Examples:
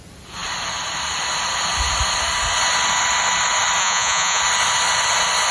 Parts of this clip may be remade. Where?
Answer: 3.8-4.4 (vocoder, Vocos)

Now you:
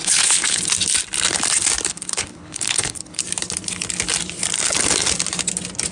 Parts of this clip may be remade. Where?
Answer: 0.0-0.6 (codec, HILCodec); 1.9-3.2

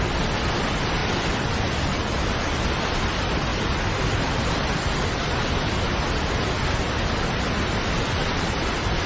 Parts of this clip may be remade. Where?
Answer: none

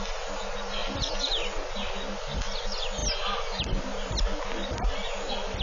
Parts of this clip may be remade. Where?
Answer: none

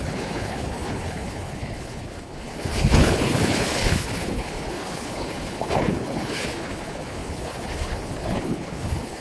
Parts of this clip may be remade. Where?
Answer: 0.0-9.2 (codec, HILCodec)